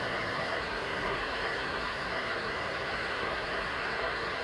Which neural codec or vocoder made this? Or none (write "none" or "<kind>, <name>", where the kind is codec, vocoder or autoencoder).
codec, SNAC